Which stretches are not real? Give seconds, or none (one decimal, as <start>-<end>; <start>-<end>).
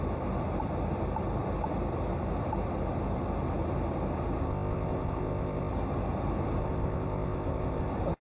4.4-5.7; 6.6-7.9